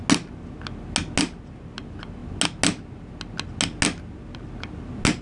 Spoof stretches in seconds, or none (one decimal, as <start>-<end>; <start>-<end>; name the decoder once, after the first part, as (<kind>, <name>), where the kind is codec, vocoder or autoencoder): none